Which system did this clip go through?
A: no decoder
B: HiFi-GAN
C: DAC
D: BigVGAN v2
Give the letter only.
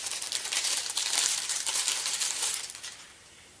D